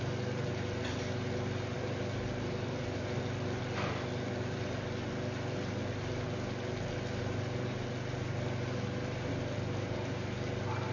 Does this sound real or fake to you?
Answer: real